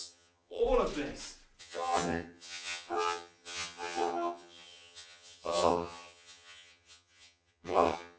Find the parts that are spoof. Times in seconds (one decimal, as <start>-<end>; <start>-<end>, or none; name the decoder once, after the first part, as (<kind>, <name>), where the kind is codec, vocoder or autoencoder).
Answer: 0.0-0.6 (vocoder, HiFi-GAN); 1.6-8.2